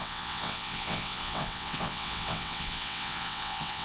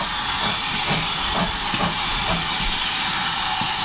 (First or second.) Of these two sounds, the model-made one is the first